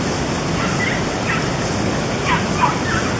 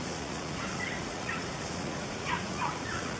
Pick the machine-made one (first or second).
second